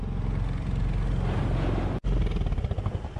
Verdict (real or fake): real